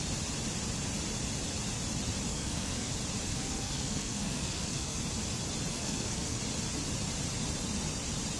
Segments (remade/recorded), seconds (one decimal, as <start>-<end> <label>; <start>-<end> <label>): 0.0-2.3 recorded; 2.3-2.9 remade; 2.9-3.3 recorded; 3.3-5.0 remade; 5.0-5.7 recorded; 5.7-6.4 remade; 6.4-8.4 recorded